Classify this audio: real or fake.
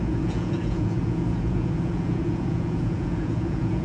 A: fake